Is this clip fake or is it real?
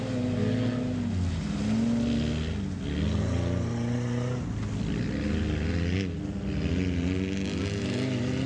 real